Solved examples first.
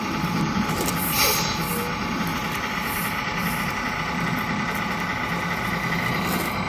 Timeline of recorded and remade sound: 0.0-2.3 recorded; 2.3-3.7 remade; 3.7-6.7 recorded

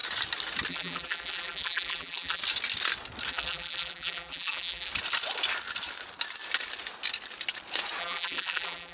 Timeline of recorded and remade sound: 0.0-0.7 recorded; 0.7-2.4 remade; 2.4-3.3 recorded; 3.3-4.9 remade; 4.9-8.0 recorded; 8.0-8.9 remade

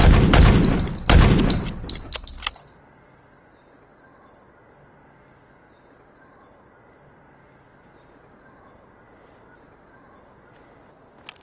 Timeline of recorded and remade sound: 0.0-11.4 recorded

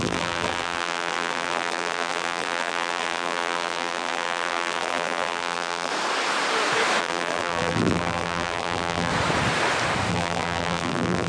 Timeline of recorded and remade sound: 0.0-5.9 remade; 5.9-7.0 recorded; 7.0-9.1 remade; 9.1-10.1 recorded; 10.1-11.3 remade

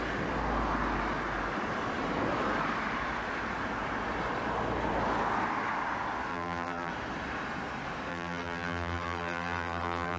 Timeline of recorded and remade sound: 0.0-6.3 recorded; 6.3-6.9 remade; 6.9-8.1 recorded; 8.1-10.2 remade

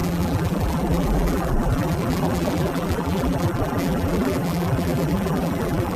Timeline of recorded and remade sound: 0.0-6.0 remade

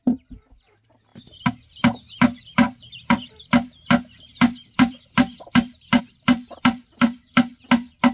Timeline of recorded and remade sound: 0.0-7.5 remade; 7.5-8.1 recorded